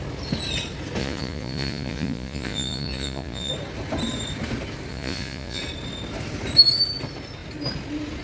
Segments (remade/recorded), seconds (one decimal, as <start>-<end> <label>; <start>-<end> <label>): 0.0-1.0 recorded; 1.0-3.5 remade; 3.5-4.9 recorded; 4.9-5.6 remade; 5.6-8.2 recorded